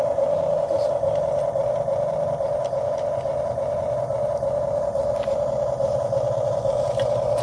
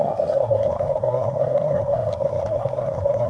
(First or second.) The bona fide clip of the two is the first